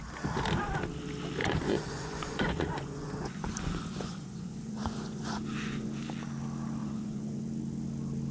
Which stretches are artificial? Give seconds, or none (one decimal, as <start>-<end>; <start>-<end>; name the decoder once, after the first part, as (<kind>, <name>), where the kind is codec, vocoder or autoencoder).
1.4-6.0 (vocoder, Vocos); 6.8-7.4